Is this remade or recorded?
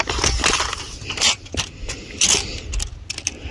recorded